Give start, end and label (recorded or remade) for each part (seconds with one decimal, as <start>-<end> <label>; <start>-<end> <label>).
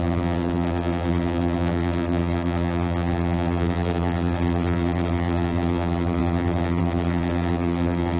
0.0-8.2 remade